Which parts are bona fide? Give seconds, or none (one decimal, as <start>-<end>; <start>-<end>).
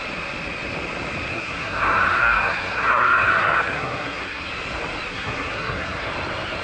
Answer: 0.0-1.3; 4.5-5.1; 6.1-6.6